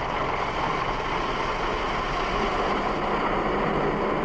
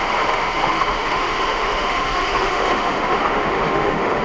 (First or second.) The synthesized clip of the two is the second